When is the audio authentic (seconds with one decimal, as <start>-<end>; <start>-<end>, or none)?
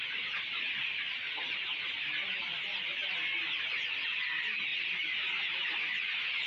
0.0-6.5